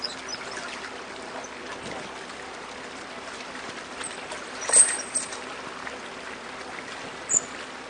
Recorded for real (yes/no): yes